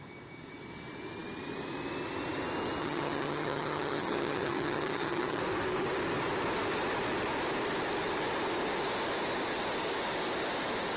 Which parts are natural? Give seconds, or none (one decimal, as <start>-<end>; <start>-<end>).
0.0-2.8; 5.4-11.0

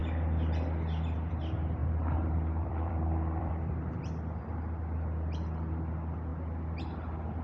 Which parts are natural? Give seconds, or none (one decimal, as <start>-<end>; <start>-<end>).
0.0-1.8; 4.4-7.4

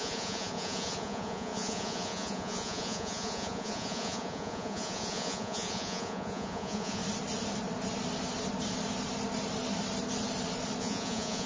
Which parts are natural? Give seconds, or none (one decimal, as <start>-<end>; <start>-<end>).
7.0-10.8

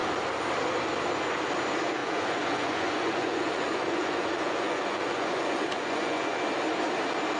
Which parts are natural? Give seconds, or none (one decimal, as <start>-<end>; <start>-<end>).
0.0-2.0; 6.4-7.4